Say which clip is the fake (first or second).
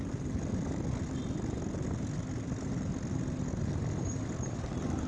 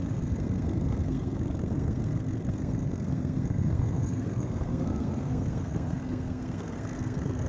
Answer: second